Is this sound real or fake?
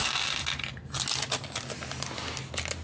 real